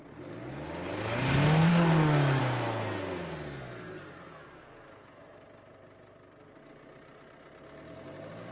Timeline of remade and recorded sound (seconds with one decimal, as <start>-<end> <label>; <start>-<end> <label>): 0.0-1.7 recorded; 1.7-2.4 remade; 2.4-8.5 recorded